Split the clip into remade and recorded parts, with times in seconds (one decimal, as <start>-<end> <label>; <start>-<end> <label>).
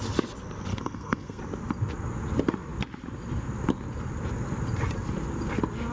0.0-0.7 recorded; 0.7-1.4 remade; 1.4-5.9 recorded